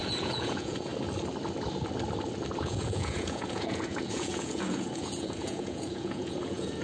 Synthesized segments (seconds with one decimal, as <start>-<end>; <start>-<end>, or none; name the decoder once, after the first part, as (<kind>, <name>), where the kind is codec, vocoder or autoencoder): 0.0-0.9 (vocoder, Vocos); 2.6-6.8